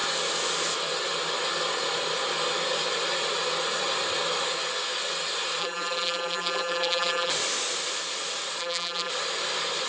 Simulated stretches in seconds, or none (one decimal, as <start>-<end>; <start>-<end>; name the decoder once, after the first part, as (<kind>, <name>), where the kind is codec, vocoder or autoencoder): 5.6-7.3 (vocoder, BigVGAN v2); 8.6-9.1